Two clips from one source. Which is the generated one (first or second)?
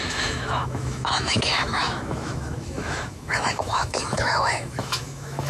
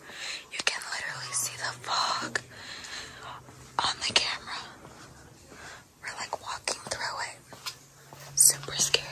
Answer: first